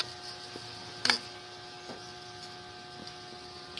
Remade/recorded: recorded